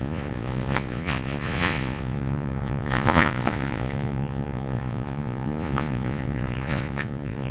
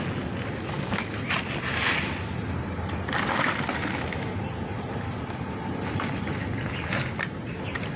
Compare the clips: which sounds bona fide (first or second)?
second